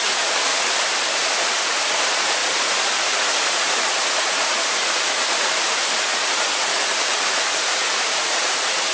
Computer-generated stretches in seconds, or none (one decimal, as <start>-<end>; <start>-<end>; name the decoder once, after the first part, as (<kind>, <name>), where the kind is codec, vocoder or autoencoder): 0.0-0.5 (vocoder, Vocos); 1.4-8.9